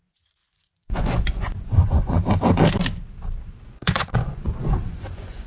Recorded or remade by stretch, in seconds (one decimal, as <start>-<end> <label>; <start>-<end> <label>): 0.0-2.2 remade; 2.2-3.6 recorded; 3.6-5.5 remade